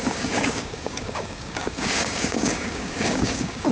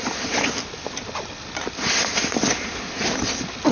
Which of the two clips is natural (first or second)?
second